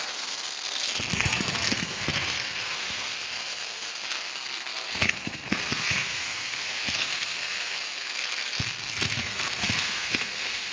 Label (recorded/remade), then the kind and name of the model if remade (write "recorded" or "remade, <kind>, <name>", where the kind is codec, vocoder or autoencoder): remade, codec, SNAC